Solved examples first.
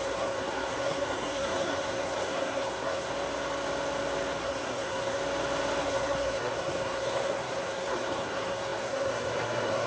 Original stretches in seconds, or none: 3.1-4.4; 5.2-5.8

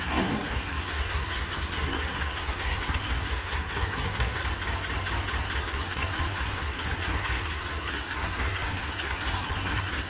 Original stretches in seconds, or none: 4.4-5.6

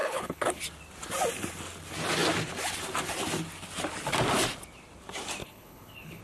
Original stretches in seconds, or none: 0.6-5.4

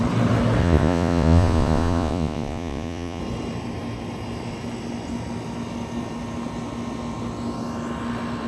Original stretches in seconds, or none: 0.0-0.6; 3.2-8.5

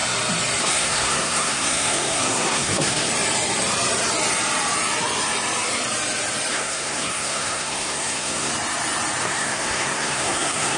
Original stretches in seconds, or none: 0.0-0.6; 3.1-6.5; 8.5-9.2

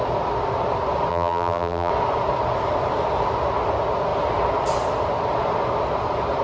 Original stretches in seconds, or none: 0.0-1.1; 1.9-6.4